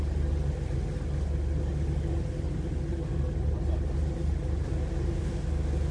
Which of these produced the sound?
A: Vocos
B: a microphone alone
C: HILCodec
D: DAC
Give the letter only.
B